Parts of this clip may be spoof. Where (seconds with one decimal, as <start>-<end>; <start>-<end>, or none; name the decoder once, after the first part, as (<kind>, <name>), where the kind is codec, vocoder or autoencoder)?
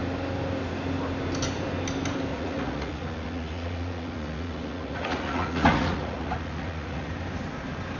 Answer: 2.3-7.1 (vocoder, Vocos)